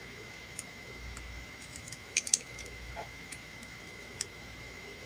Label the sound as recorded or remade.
remade